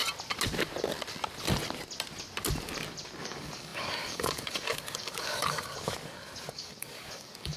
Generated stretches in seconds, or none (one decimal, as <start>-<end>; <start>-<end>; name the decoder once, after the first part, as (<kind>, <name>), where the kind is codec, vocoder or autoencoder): 3.2-7.6 (codec, DAC)